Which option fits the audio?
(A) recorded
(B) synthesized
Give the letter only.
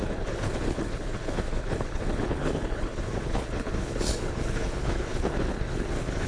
B